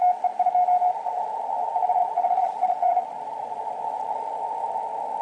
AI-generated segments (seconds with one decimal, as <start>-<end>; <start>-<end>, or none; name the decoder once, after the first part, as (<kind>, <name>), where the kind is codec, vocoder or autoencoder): 2.0-4.0 (vocoder, Vocos)